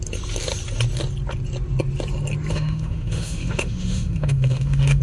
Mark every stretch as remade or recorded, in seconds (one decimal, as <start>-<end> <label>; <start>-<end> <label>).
0.0-2.5 recorded; 2.5-5.0 remade